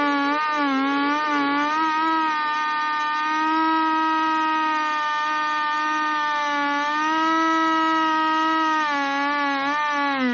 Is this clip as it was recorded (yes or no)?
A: yes